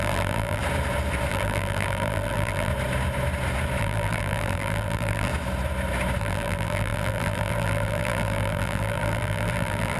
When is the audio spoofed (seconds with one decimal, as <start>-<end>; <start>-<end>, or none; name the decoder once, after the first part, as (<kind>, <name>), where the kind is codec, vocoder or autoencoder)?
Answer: 0.0-0.6 (vocoder, BigVGAN v2); 1.3-2.7; 3.8-5.3; 6.2-10.0